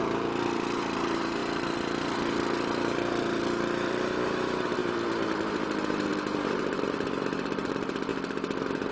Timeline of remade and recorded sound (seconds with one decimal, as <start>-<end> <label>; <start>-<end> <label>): 0.0-8.1 remade; 8.1-8.9 recorded